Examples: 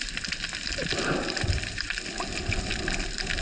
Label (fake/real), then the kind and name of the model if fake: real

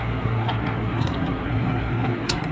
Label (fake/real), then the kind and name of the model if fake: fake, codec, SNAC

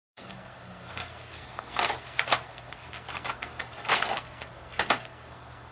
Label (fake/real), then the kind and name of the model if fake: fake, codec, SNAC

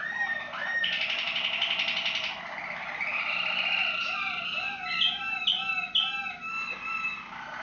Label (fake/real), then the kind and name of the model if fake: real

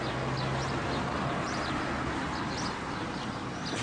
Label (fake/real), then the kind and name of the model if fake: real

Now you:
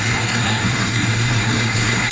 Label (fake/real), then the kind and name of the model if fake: fake, codec, SNAC